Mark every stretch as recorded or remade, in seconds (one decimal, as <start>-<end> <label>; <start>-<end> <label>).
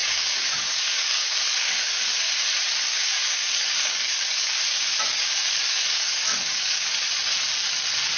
0.0-2.3 remade; 2.3-2.9 recorded; 2.9-4.6 remade; 4.6-5.2 recorded; 5.2-6.9 remade; 6.9-8.2 recorded